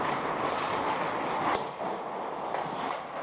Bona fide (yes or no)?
yes